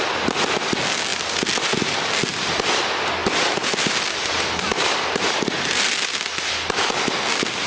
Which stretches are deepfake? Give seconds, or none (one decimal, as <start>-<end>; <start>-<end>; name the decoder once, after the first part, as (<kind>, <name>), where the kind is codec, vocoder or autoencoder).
1.1-2.8 (vocoder, BigVGAN v2); 3.2-6.4